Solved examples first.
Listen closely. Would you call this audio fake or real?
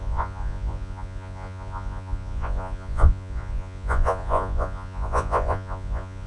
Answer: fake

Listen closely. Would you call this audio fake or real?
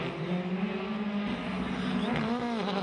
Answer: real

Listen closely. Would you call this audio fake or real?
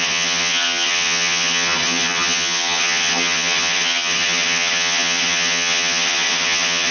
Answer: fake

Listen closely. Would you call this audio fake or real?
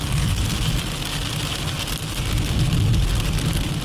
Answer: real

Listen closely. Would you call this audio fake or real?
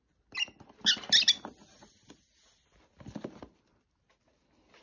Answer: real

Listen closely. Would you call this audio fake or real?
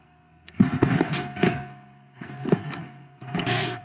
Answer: fake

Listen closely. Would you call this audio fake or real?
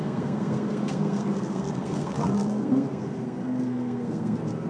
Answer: fake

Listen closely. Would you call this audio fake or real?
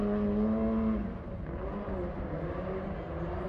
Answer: real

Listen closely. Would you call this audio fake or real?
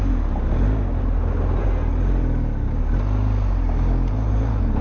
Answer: real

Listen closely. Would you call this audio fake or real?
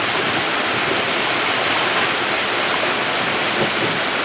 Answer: fake